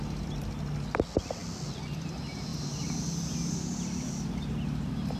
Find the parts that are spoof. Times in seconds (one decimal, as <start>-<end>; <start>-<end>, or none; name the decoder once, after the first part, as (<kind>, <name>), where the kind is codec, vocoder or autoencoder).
none